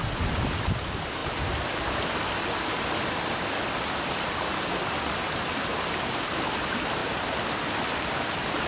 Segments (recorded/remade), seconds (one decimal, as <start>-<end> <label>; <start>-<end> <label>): 0.0-8.7 remade